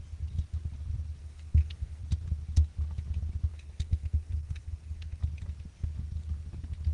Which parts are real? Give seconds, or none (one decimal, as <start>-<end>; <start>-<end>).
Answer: 0.0-1.2; 2.0-3.5; 5.2-6.9